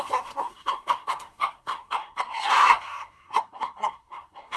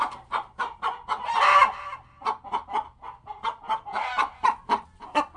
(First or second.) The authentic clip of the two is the second